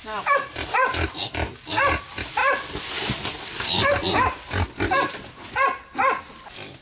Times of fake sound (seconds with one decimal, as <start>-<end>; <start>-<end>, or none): none